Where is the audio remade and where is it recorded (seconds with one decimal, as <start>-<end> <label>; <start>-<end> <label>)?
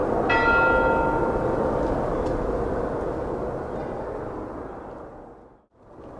0.0-6.2 recorded